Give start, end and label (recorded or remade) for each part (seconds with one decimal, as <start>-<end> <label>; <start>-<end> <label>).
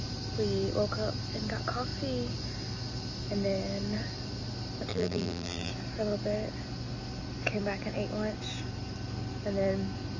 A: 0.0-4.9 recorded; 4.9-5.7 remade; 5.7-10.2 recorded